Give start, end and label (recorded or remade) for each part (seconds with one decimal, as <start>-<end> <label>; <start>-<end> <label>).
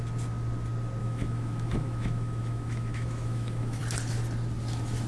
0.0-1.0 recorded; 1.0-3.8 remade; 3.8-5.1 recorded